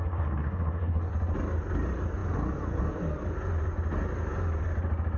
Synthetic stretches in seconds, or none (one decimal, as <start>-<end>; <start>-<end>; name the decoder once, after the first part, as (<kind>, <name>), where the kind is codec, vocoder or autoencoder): 0.0-1.1 (codec, SNAC)